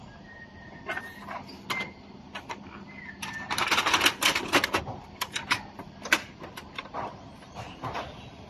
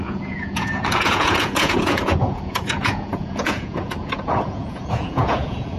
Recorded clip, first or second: first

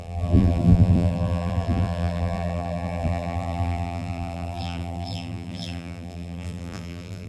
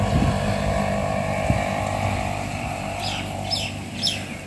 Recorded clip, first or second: second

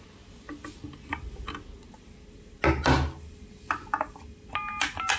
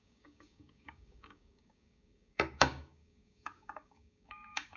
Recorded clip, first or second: first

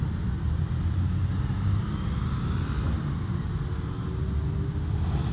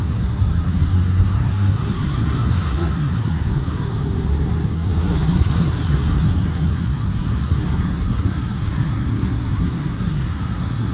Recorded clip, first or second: first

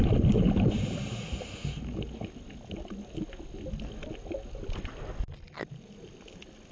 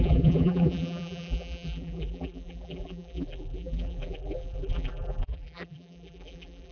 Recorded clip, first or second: first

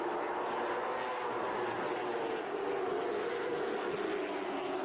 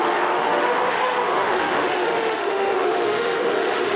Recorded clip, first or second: first